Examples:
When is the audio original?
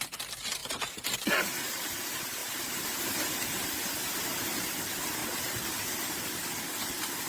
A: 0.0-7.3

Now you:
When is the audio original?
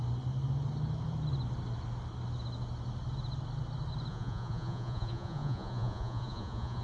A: 0.0-4.1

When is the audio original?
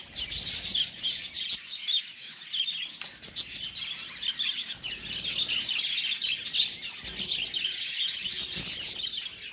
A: 0.0-1.8; 2.4-9.5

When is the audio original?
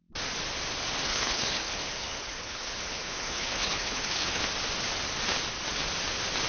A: 0.0-1.1; 4.4-6.5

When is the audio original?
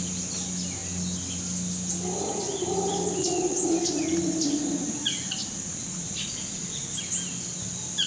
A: 0.0-3.2; 3.7-5.5; 7.0-8.1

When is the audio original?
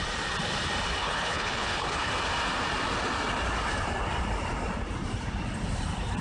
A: 0.0-1.0; 2.1-6.2